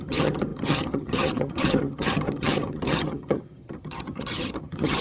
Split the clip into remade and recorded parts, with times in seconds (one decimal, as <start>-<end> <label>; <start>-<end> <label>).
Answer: 0.0-5.0 remade